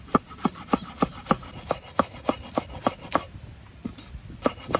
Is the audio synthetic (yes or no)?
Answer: no